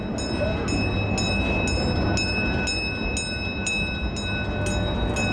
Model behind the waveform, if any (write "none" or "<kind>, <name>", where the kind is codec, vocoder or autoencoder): none